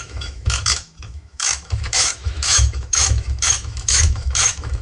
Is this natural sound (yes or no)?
no